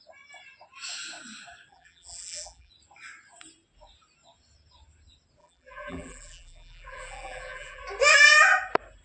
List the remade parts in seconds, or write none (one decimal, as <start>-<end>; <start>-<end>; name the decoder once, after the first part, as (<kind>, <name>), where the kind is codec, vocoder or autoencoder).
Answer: 1.7-2.7 (vocoder, BigVGAN v2); 5.4-7.8